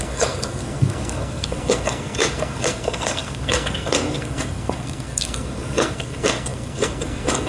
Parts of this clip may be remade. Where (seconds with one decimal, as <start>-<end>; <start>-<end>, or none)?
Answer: 0.0-7.5

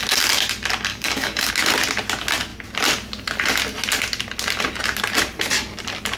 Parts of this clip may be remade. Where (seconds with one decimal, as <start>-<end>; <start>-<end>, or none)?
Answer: 0.9-1.5

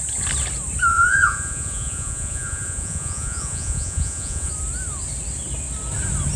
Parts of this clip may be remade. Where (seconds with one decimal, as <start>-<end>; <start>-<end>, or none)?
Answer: 0.9-4.5

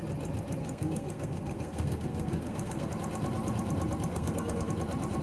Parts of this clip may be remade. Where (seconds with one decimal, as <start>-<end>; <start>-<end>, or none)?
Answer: 0.6-2.9; 4.1-4.7